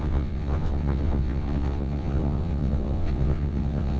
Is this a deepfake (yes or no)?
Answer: yes